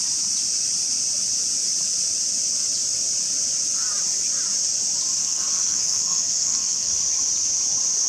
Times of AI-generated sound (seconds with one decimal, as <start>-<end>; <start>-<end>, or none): 5.2-6.9